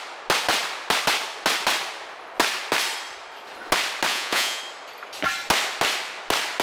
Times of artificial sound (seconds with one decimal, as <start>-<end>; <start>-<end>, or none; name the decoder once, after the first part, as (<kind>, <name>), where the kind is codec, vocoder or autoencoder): 4.1-4.6 (vocoder, Vocos)